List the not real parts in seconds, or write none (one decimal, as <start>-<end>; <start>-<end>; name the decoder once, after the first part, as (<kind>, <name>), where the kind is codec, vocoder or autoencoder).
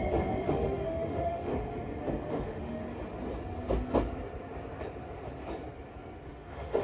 0.5-1.5 (autoencoder, DAC-VAE); 2.3-2.8; 6.3-6.8